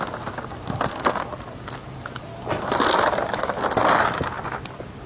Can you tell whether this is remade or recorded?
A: recorded